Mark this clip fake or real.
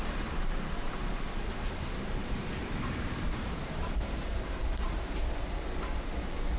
fake